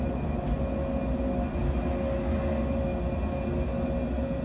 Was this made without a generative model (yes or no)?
yes